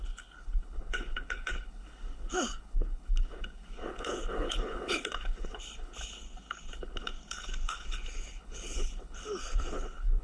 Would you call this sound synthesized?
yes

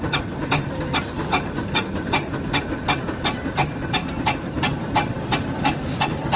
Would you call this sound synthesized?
no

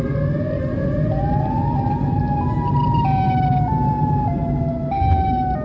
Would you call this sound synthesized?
no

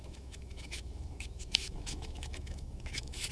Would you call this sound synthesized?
yes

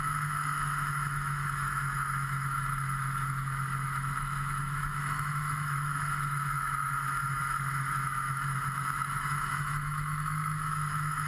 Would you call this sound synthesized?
yes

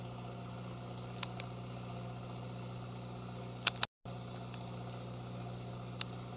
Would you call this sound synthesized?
no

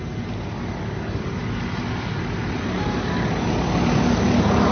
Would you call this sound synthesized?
no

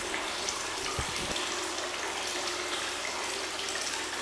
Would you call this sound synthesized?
no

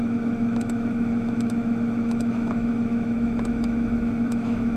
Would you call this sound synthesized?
yes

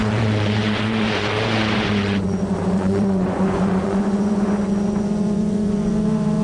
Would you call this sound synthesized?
yes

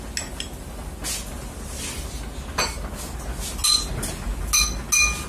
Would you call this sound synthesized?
no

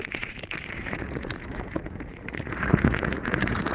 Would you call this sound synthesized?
yes